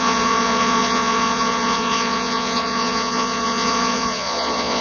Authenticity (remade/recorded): remade